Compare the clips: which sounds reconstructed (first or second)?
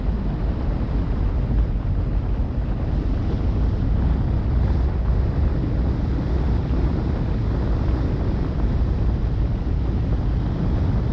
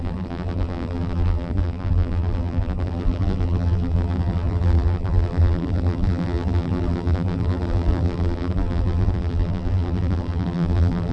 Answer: second